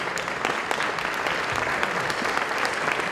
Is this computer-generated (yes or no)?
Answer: no